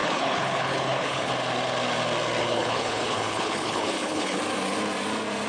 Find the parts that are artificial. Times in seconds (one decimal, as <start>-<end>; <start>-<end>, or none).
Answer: 0.0-1.3; 2.4-4.4